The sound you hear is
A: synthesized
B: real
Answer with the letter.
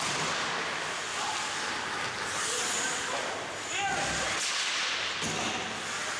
B